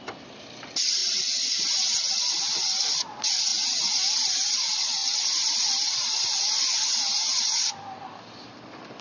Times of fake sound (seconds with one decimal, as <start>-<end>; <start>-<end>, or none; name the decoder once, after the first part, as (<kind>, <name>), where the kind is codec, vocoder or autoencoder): 0.0-1.0 (vocoder, BigVGAN v2); 2.1-3.5; 4.6-9.0